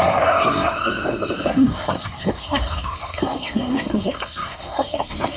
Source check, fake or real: fake